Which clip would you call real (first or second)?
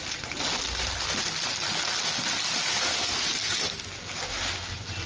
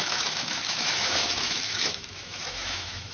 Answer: first